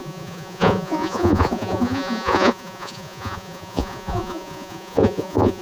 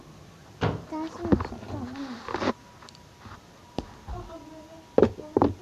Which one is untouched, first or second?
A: second